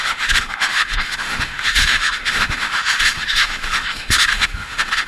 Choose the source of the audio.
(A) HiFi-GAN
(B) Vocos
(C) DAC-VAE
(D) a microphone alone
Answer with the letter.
C